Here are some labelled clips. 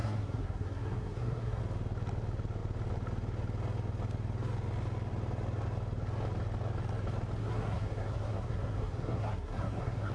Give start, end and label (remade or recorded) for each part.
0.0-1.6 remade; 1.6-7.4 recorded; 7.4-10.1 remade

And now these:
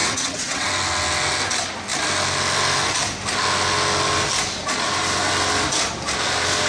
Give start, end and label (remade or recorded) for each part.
0.0-0.7 remade; 0.7-6.7 recorded

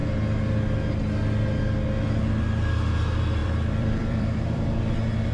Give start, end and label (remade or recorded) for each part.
0.0-3.4 recorded; 3.4-4.8 remade; 4.8-5.3 recorded

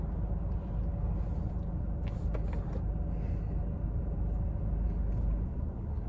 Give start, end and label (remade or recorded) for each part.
0.0-6.1 recorded

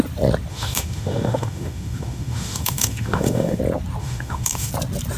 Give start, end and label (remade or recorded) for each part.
0.0-0.5 recorded; 0.5-3.6 remade; 3.6-4.0 recorded; 4.0-4.7 remade; 4.7-5.2 recorded

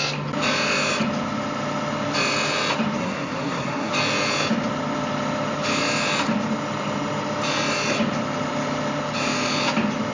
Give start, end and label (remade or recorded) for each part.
0.0-3.0 recorded; 3.0-3.9 remade; 3.9-10.1 recorded

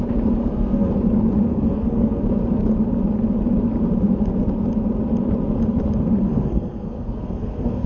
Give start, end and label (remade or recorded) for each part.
0.0-0.4 recorded; 0.4-0.9 remade; 0.9-1.5 recorded; 1.5-2.2 remade; 2.2-6.3 recorded; 6.3-7.9 remade